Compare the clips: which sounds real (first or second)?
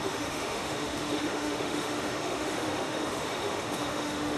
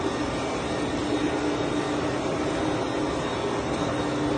second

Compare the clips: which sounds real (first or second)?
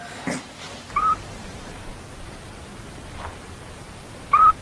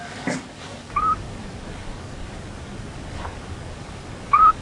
first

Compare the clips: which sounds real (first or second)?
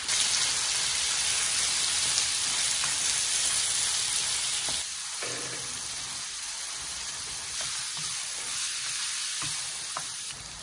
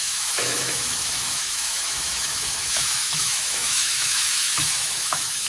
first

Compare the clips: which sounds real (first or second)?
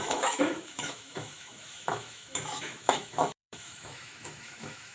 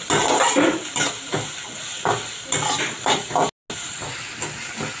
second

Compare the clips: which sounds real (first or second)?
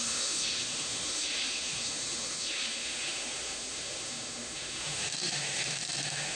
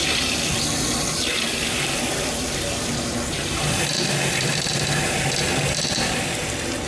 second